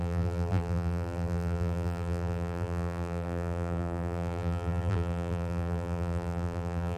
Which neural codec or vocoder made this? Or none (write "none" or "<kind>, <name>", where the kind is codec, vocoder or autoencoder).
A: vocoder, BigVGAN v2